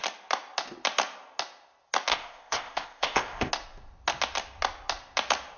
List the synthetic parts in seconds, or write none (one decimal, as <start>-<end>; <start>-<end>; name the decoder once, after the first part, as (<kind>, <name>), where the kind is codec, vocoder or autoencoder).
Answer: 2.1-3.5 (codec, ZipCodec)